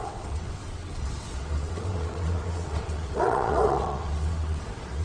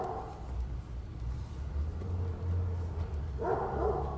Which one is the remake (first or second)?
first